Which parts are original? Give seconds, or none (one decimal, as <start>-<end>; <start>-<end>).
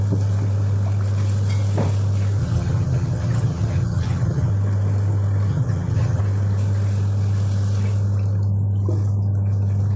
0.0-2.4; 4.5-5.5; 6.2-10.0